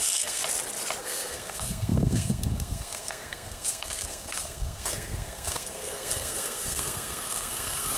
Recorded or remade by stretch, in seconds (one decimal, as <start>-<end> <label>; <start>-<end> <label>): 0.0-0.4 remade; 0.4-1.0 recorded; 1.0-8.0 remade